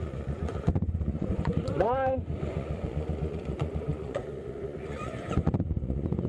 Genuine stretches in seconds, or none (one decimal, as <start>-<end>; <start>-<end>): none